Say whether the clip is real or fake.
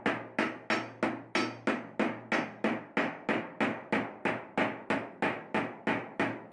real